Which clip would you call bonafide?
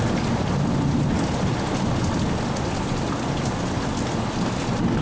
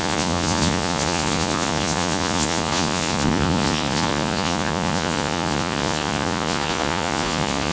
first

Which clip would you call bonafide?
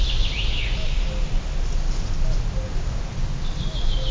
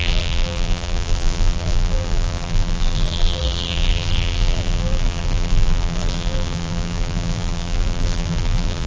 first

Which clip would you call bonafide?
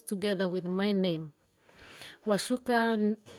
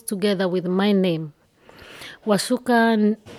second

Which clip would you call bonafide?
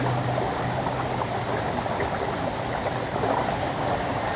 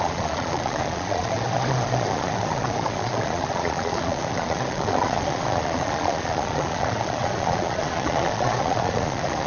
first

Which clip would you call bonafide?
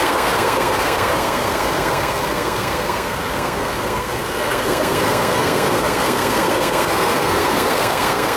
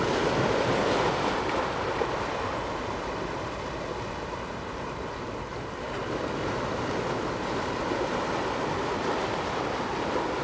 second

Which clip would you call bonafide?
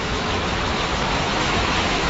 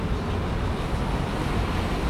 second